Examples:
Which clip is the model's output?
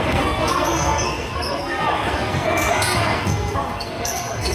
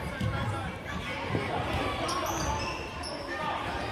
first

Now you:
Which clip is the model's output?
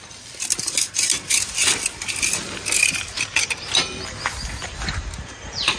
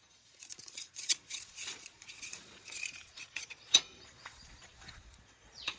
second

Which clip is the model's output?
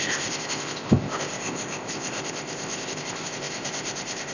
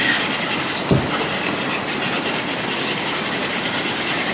first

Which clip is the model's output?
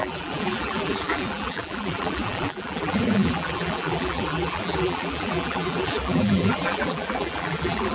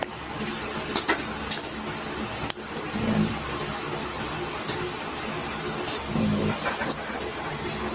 first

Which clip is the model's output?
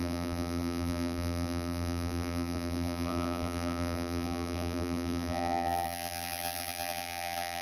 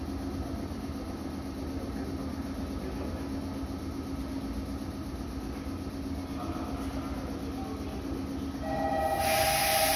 first